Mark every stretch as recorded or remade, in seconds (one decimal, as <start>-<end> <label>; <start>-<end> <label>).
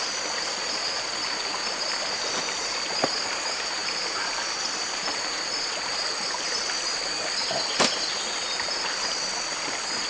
0.0-10.1 recorded